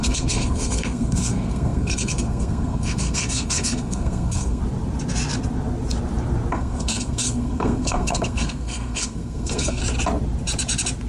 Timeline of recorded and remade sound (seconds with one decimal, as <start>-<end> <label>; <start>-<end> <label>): 0.0-4.6 remade; 4.6-6.5 recorded; 6.5-9.8 remade; 9.8-11.1 recorded